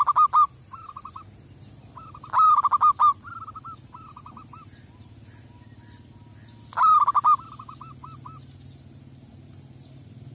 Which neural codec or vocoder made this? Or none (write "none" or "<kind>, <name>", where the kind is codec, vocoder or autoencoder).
none